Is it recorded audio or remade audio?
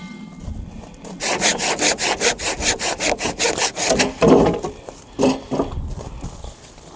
recorded